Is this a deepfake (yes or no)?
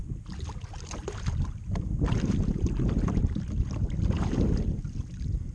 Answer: no